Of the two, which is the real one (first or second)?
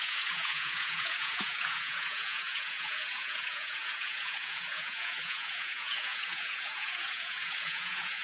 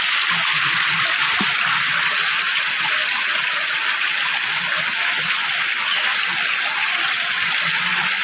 second